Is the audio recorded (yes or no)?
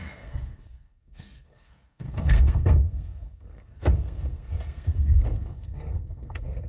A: no